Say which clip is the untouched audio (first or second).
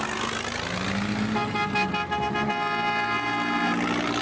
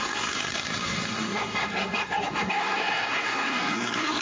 first